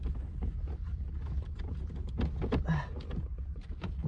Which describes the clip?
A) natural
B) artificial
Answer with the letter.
A